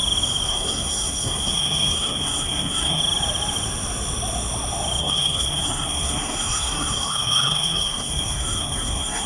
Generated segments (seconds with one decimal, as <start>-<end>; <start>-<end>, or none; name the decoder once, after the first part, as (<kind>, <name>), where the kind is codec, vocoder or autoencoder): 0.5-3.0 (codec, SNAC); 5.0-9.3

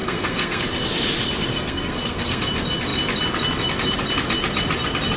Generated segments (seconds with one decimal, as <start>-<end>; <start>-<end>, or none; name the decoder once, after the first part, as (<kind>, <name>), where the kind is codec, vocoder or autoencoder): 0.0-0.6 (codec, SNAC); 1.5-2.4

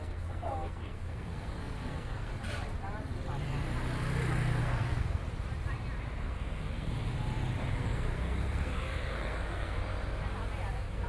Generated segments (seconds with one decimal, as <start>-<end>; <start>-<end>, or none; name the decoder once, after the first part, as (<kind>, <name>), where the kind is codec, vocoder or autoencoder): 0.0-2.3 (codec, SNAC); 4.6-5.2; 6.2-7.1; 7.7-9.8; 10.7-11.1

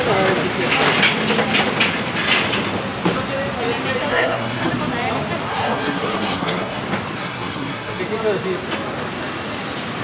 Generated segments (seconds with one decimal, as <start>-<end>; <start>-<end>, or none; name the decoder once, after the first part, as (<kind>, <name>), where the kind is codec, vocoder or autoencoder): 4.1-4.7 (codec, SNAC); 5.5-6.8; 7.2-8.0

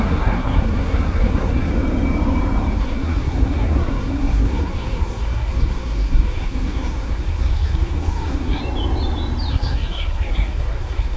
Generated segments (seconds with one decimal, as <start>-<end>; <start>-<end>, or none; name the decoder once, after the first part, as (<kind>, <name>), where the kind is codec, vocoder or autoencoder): 0.0-1.7 (codec, SNAC); 2.8-8.6; 9.5-11.2

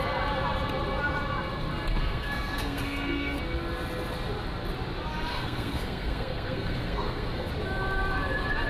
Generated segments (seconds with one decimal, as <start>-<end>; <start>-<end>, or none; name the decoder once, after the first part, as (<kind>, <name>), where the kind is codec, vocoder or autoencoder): 2.0-3.4 (codec, SNAC); 5.3-7.5